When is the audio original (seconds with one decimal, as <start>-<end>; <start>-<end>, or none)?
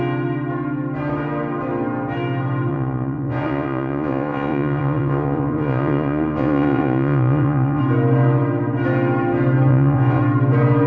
0.0-2.7; 7.8-9.7; 10.2-10.9